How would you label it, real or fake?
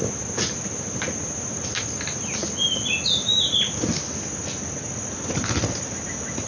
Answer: real